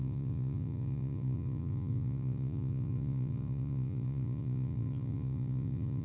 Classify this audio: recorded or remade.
remade